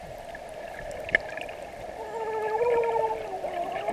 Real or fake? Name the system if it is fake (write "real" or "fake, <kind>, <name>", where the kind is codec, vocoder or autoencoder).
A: real